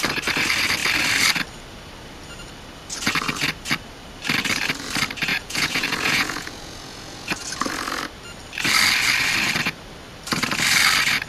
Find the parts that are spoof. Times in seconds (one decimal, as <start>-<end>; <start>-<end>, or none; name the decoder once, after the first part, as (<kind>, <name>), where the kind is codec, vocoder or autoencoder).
5.3-7.3 (vocoder, Vocos)